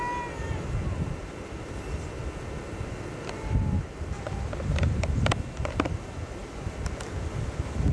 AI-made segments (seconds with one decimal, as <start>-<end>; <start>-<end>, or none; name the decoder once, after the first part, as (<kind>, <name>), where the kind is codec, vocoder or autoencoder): none